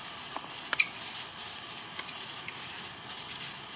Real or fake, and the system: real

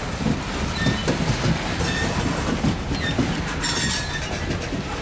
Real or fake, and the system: real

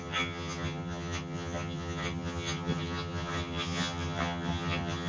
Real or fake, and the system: fake, vocoder, HiFi-GAN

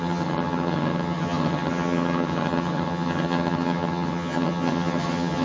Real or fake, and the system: fake, vocoder, HiFi-GAN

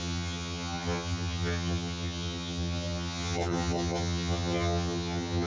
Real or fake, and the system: fake, vocoder, HiFi-GAN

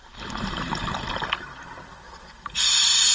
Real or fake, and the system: real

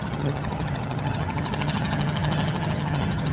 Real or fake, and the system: fake, vocoder, HiFi-GAN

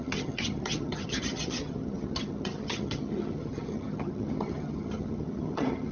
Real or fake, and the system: fake, vocoder, HiFi-GAN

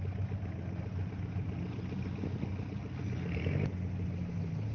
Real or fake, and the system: real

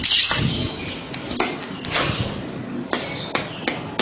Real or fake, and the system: real